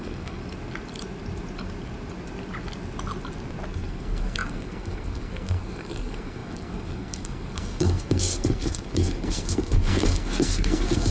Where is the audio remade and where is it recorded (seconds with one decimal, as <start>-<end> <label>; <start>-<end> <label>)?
0.0-0.4 remade; 0.4-3.7 recorded; 3.7-11.1 remade